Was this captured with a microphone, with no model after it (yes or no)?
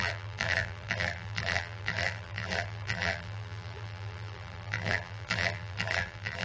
no